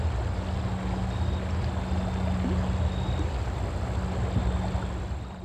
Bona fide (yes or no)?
yes